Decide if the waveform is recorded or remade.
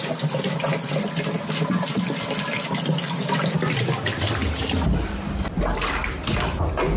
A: recorded